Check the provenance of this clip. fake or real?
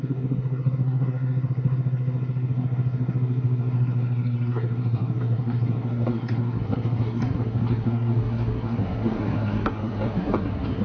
fake